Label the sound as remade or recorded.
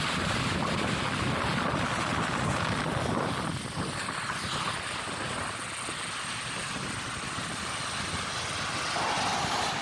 recorded